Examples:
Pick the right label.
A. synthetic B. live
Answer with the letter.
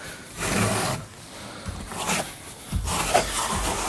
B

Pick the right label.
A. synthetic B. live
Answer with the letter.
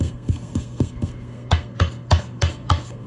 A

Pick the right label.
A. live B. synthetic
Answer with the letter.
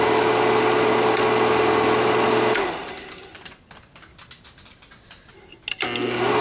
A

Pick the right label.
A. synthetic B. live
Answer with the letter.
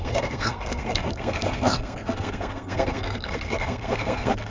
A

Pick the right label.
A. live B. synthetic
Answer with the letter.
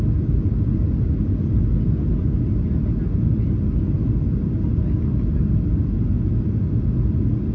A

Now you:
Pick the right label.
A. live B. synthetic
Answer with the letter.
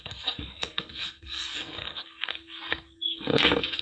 B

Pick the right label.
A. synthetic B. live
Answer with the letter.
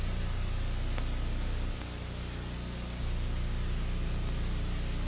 B